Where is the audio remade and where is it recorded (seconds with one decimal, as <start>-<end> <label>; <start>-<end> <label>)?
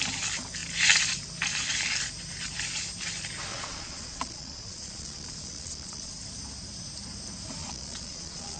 0.0-3.5 recorded; 3.5-6.1 remade; 6.1-7.6 recorded; 7.6-8.6 remade